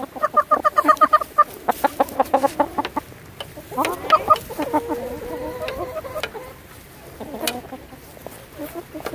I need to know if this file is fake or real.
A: real